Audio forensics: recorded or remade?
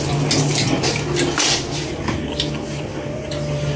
recorded